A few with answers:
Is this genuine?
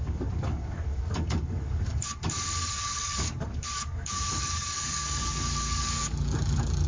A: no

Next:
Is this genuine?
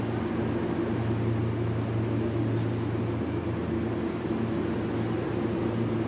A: yes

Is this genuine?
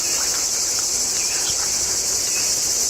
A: yes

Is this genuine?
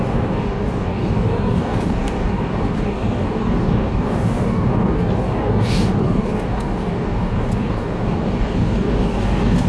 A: no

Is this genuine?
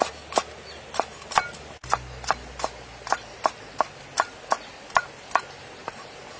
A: yes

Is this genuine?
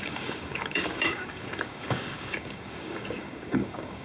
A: no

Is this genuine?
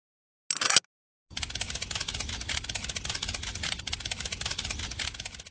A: yes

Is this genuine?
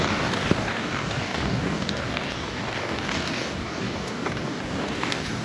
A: no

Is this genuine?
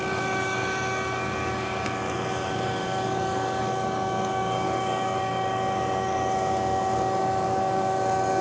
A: no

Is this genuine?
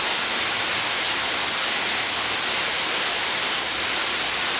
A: yes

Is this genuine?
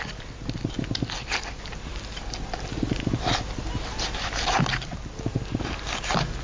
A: yes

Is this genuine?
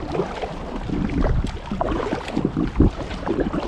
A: yes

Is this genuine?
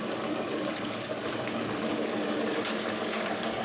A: no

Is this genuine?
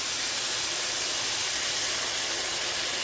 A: yes